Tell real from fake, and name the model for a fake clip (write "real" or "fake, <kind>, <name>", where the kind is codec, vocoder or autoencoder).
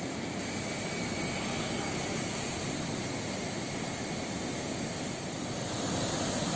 real